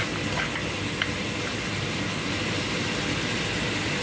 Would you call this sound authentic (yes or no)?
yes